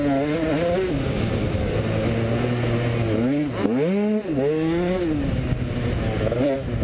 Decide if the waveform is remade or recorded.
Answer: recorded